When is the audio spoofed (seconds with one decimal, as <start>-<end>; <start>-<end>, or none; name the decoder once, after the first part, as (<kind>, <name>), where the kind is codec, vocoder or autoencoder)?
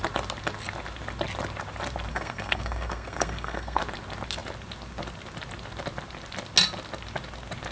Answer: 2.1-3.8 (codec, SNAC)